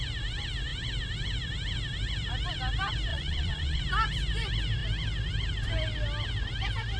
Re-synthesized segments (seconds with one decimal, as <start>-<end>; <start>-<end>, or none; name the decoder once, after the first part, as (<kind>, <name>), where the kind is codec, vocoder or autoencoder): 3.1-3.8 (vocoder, Vocos)